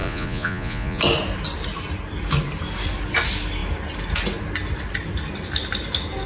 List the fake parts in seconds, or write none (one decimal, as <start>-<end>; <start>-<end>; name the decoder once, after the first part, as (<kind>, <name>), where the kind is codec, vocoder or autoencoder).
0.0-1.0 (vocoder, Vocos)

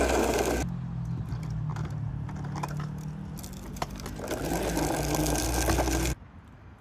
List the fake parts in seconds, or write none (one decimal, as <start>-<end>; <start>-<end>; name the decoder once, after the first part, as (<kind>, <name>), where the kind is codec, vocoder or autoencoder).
none

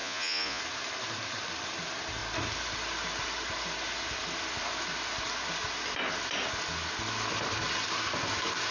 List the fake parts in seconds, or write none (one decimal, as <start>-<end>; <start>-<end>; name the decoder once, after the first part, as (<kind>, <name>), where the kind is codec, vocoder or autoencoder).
0.0-0.6 (vocoder, Vocos)

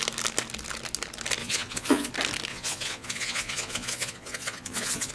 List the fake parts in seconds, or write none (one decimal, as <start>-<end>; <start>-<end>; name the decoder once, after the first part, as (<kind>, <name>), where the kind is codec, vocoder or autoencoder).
1.4-2.1 (vocoder, Vocos); 2.5-5.1

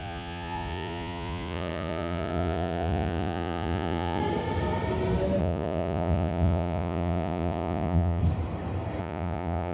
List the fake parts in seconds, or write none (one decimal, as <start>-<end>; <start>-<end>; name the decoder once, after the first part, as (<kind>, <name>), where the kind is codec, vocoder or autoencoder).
0.0-4.2 (vocoder, Vocos); 5.4-8.2; 9.0-9.7